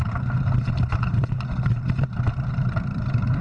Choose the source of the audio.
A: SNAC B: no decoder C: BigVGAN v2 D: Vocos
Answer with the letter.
B